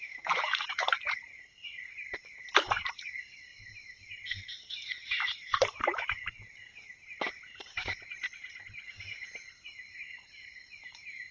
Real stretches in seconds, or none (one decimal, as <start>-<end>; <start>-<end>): none